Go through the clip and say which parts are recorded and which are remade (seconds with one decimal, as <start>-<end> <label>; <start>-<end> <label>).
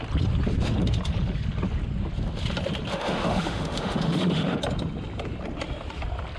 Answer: 0.0-2.9 recorded; 2.9-4.6 remade; 4.6-6.4 recorded